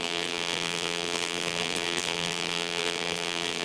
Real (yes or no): no